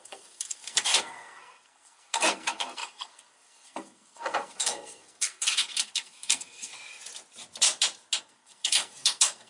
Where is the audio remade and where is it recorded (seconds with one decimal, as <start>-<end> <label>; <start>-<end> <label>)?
0.0-6.7 remade; 6.7-8.2 recorded; 8.2-9.5 remade